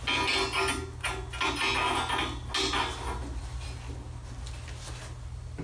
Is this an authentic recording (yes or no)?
yes